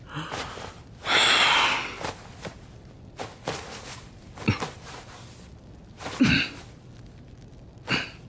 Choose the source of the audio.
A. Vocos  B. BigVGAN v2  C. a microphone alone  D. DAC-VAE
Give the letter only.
C